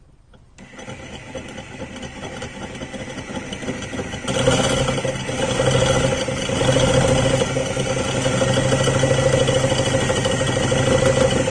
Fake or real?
real